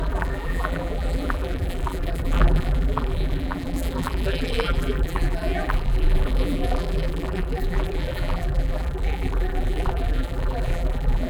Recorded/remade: remade